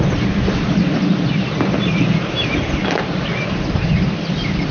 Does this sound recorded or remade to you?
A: recorded